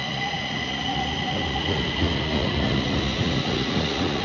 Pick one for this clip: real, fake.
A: fake